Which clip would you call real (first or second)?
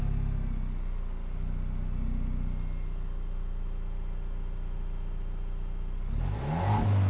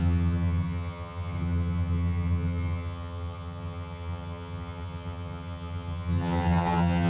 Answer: first